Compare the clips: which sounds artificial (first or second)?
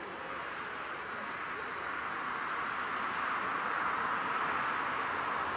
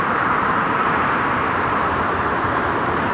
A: second